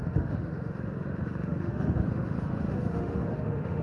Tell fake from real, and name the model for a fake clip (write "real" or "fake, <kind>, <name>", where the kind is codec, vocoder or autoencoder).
fake, autoencoder, DAC-VAE